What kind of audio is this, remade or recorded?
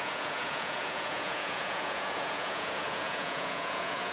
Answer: remade